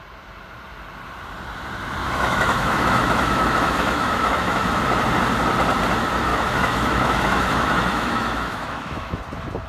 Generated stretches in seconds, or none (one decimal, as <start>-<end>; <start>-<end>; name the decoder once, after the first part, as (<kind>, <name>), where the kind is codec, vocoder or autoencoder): 2.0-4.7 (autoencoder, DAC-VAE); 6.3-9.2